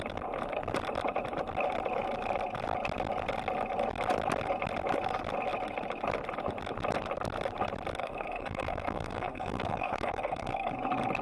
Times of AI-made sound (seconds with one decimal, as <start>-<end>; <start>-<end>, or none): 8.0-10.7

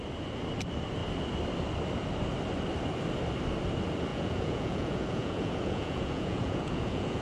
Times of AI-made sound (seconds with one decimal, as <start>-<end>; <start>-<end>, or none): 4.1-7.2

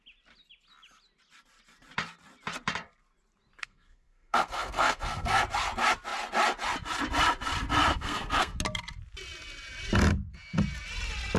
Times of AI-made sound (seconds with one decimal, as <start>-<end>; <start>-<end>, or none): 3.6-5.4; 7.9-8.6